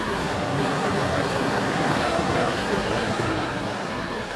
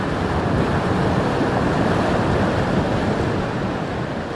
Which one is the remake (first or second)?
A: first